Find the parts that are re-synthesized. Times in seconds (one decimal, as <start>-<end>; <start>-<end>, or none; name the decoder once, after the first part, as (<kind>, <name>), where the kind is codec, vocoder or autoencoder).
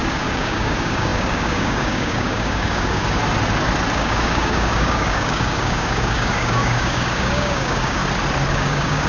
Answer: 0.0-3.2 (codec, DAC); 3.9-8.0; 8.5-9.1